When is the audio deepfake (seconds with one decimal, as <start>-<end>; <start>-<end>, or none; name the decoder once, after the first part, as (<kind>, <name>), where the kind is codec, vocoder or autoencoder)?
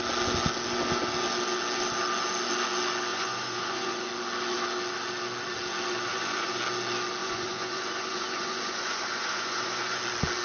3.1-4.1 (vocoder, Vocos); 6.1-6.6; 7.2-10.0